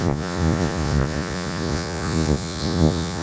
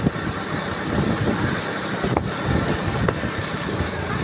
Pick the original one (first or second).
second